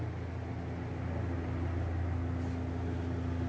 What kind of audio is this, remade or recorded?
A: recorded